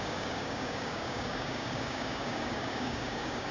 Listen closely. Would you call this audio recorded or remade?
remade